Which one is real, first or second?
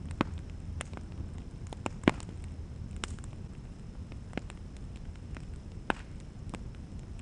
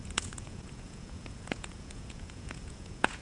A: first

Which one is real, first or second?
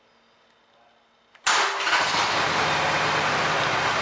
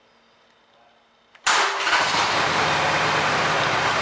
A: first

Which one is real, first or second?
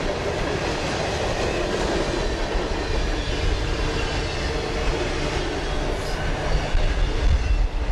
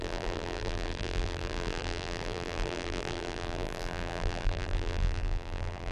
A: first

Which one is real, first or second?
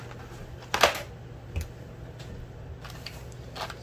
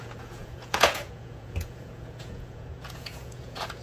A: first